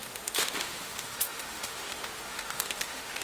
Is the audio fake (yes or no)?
yes